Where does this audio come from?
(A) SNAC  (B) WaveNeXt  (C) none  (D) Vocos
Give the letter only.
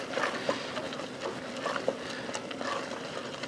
C